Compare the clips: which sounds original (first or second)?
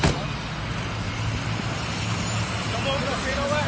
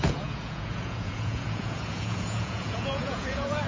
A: first